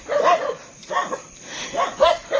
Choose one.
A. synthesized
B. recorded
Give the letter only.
A